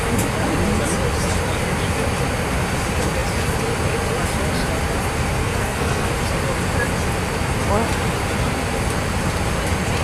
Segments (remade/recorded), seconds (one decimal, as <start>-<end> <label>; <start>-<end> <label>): 0.0-5.4 recorded; 5.4-6.1 remade; 6.1-10.0 recorded

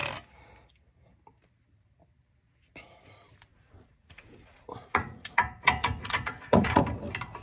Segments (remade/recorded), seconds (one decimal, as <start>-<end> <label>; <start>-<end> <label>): 0.0-3.5 recorded; 3.5-6.8 remade; 6.8-7.4 recorded

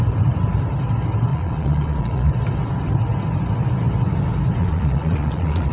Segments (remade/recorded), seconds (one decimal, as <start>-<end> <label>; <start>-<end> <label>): 0.0-1.3 recorded; 1.3-2.3 remade; 2.3-4.6 recorded; 4.6-5.7 remade

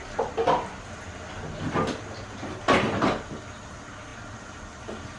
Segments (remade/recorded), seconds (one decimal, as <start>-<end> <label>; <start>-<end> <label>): 0.0-5.2 recorded

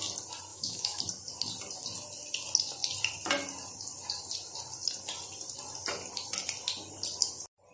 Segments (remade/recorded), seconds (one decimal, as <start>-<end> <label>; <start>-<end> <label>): 0.0-0.5 recorded; 0.5-1.0 remade; 1.0-7.7 recorded